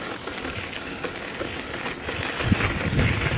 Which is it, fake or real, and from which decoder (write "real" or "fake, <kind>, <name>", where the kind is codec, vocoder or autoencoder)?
real